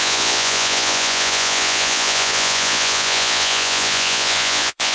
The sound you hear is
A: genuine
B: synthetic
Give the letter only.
B